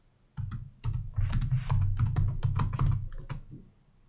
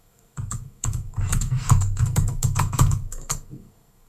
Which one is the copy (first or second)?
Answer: second